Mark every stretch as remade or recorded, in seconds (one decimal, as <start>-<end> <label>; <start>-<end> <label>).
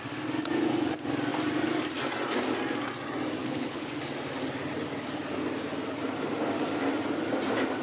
0.0-3.4 recorded; 3.4-3.9 remade; 3.9-7.8 recorded